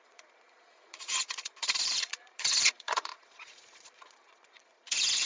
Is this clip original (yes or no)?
no